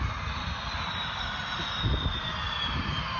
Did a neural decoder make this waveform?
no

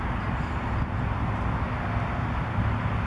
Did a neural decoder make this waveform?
no